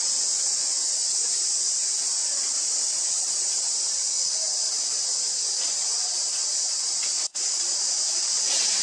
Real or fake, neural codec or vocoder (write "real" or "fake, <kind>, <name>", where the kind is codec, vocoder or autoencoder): real